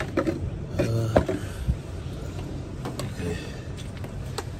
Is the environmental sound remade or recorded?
recorded